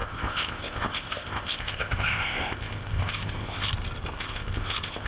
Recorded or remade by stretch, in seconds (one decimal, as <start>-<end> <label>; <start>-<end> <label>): 0.0-3.7 remade; 3.7-4.2 recorded; 4.2-5.1 remade